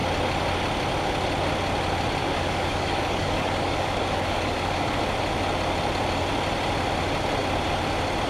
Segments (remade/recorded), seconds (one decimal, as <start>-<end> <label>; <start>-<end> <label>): 0.0-2.2 recorded; 2.2-5.0 remade; 5.0-8.3 recorded